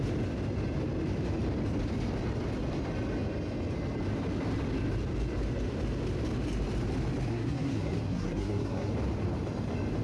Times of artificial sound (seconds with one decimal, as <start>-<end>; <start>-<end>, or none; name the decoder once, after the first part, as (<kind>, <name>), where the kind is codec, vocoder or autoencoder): 7.3-8.9 (codec, SNAC)